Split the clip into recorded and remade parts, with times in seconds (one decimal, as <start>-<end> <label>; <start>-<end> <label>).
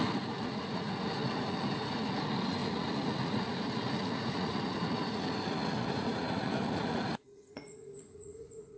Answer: 0.0-8.8 remade